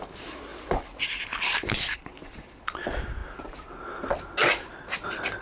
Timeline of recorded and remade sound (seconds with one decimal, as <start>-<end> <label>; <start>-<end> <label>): 0.0-3.2 remade; 3.2-4.7 recorded; 4.7-5.4 remade